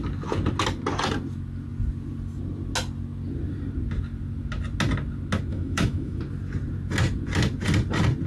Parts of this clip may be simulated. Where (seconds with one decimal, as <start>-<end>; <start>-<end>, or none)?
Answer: 5.5-6.2